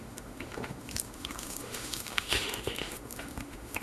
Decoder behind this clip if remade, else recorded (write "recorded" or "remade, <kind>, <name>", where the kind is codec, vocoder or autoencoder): remade, autoencoder, DAC-VAE